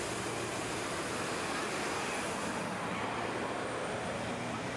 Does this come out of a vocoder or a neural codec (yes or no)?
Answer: no